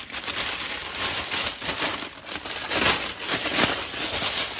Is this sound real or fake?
real